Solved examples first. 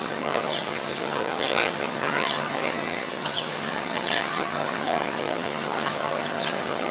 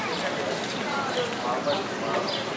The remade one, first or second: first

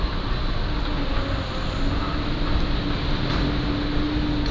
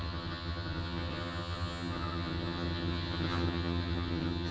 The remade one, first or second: second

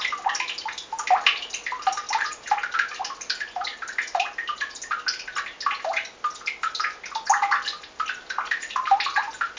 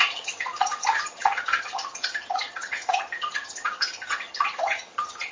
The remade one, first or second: second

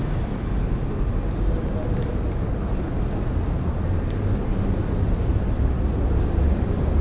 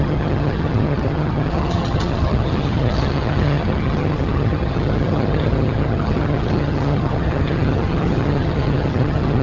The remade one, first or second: second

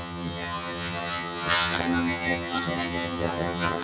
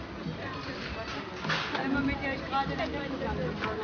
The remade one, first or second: first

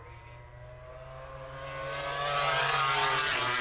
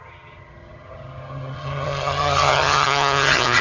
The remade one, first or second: second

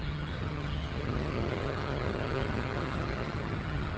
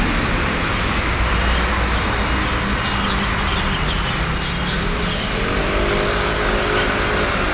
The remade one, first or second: first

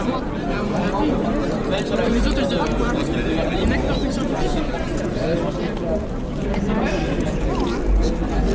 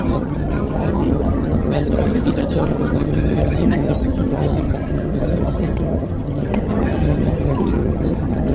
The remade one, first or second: second